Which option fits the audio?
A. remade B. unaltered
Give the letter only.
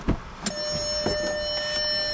B